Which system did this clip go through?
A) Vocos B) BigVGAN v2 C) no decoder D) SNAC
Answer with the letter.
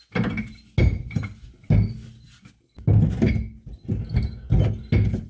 C